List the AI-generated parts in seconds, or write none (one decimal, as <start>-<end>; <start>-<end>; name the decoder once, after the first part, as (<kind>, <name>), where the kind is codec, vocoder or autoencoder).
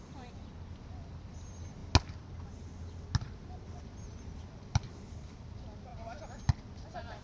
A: none